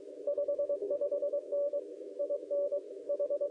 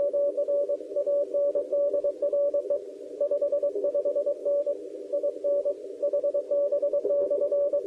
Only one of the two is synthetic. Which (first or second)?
first